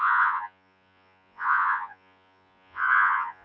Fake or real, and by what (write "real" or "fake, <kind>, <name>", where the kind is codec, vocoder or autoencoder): fake, vocoder, Vocos